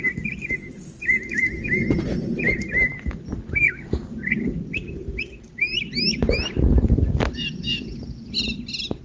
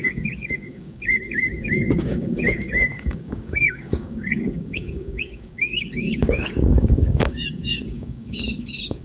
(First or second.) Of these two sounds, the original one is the first